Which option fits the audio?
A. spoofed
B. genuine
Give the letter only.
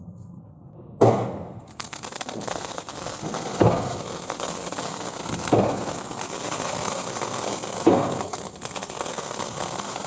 A